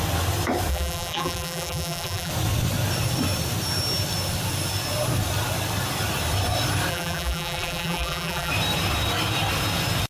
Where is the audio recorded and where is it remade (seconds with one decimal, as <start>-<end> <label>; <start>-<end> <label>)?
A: 0.0-0.7 recorded; 0.7-2.3 remade; 2.3-6.9 recorded; 6.9-8.5 remade; 8.5-10.1 recorded